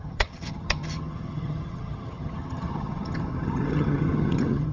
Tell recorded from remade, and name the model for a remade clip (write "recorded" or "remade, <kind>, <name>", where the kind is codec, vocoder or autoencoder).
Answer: remade, vocoder, HiFi-GAN